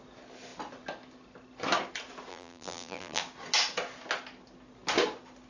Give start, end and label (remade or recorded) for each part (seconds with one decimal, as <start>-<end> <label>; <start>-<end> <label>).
0.0-2.3 recorded; 2.3-3.2 remade; 3.2-5.5 recorded